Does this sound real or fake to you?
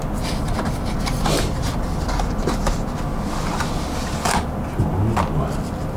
real